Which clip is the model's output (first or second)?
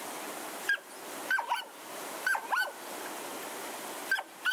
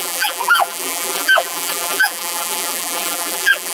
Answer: second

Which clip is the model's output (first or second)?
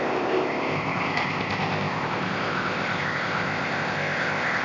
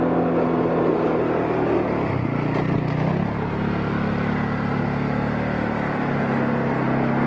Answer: first